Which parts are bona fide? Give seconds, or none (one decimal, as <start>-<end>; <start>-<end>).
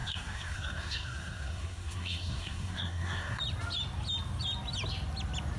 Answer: 3.4-5.6